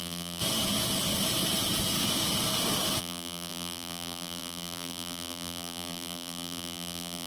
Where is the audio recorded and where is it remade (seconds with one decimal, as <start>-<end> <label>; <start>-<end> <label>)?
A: 0.0-0.4 remade; 0.4-3.0 recorded; 3.0-7.3 remade